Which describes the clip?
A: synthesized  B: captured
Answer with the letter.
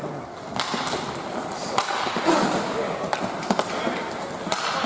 B